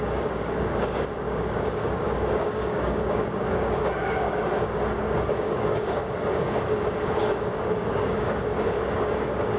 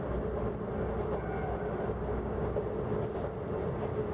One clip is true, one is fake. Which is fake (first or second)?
first